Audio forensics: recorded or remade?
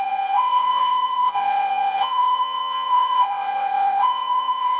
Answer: remade